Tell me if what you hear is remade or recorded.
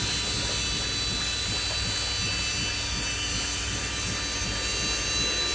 recorded